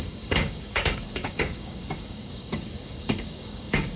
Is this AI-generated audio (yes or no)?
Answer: yes